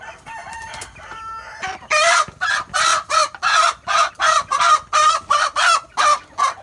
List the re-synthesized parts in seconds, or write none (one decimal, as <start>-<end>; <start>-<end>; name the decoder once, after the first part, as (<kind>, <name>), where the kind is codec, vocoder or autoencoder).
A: 0.4-1.2 (vocoder, BigVGAN v2)

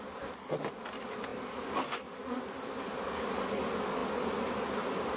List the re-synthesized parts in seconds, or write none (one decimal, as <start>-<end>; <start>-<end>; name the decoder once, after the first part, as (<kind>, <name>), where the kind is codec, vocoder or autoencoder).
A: none

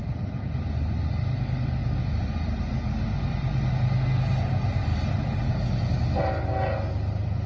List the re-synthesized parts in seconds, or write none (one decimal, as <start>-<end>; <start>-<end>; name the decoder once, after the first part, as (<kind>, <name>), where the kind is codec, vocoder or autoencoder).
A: 1.8-3.6 (vocoder, BigVGAN v2); 4.9-5.6

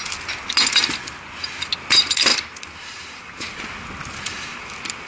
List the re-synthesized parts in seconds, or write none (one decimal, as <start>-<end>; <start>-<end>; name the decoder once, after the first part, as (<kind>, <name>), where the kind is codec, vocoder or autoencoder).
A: 2.3-3.6 (vocoder, BigVGAN v2); 4.3-5.1

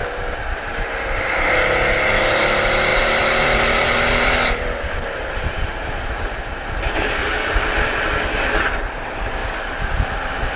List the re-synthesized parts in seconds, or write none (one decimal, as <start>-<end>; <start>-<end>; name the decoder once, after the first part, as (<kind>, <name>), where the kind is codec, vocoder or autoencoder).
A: 0.0-0.7 (vocoder, BigVGAN v2); 2.9-6.4; 7.2-8.0; 9.4-10.6

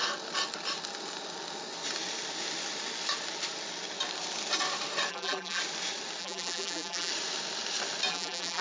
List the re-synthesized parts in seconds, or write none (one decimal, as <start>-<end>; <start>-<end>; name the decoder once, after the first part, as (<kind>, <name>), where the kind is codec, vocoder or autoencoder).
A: 5.1-5.6 (vocoder, BigVGAN v2); 6.2-7.1; 8.1-8.6